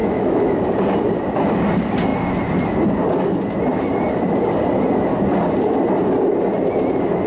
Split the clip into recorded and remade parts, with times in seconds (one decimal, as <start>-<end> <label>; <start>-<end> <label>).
0.0-0.6 remade; 0.6-7.3 recorded